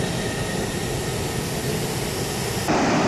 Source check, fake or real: real